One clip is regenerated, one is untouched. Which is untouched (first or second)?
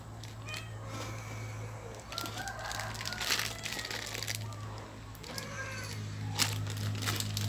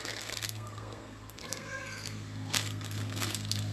first